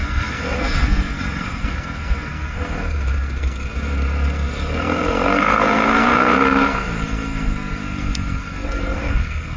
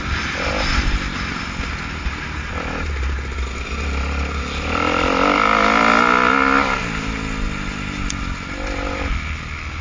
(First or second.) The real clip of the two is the second